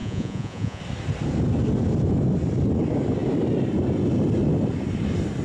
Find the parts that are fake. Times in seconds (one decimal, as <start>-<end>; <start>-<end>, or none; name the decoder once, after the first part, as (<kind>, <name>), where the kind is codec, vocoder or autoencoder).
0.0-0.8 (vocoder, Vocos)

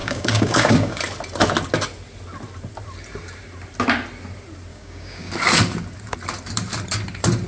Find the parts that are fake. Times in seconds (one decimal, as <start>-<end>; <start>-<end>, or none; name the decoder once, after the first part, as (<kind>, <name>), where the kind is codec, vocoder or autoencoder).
0.0-1.0 (codec, DAC); 4.7-5.3

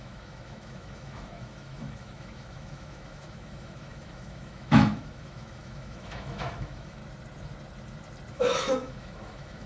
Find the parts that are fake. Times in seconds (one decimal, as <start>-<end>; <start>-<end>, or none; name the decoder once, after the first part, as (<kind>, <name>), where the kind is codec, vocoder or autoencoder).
0.0-7.0 (autoencoder, DAC-VAE); 8.3-9.7

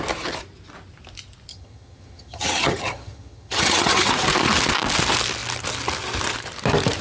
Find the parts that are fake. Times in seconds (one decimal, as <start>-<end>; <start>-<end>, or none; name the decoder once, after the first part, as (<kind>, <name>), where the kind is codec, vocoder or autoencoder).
1.5-4.1 (vocoder, HiFi-GAN)

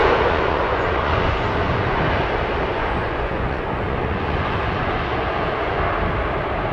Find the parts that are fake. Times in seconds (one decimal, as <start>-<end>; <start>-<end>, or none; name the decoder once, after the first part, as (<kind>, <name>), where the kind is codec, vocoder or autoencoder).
0.0-2.0 (vocoder, Vocos); 2.7-5.8

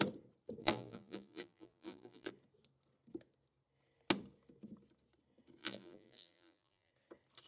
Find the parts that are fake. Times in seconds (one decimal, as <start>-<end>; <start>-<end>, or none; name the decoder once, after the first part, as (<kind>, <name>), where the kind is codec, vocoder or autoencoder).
0.6-2.3 (vocoder, BigVGAN v2); 5.6-6.9